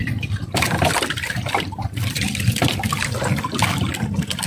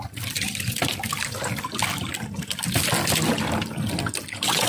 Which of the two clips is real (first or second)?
second